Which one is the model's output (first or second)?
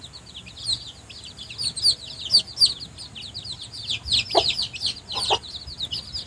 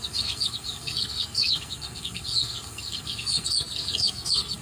second